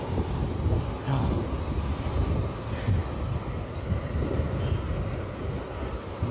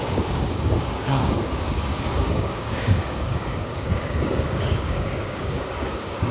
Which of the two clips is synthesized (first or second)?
second